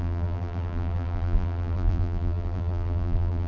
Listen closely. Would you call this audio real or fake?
fake